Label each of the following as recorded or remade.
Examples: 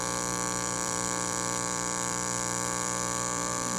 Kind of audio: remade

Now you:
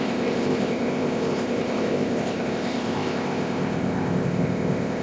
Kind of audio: remade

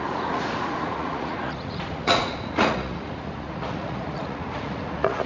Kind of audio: remade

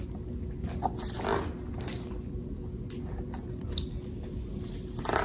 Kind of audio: recorded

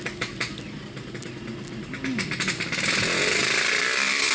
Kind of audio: recorded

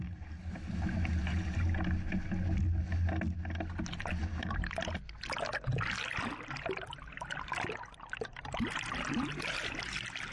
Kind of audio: recorded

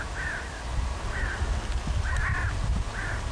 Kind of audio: recorded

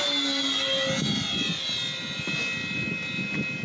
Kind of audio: recorded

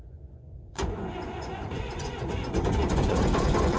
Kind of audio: remade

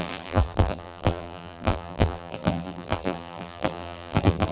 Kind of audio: remade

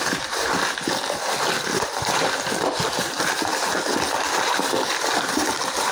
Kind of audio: recorded